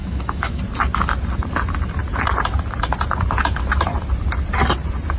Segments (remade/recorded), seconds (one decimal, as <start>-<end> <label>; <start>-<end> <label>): 0.0-0.6 remade; 0.6-5.2 recorded